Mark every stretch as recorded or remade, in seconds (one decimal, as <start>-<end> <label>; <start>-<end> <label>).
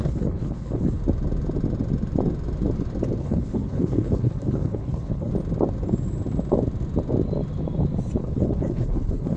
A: 0.0-1.0 remade; 1.0-3.2 recorded; 3.2-5.3 remade; 5.3-8.2 recorded; 8.2-9.4 remade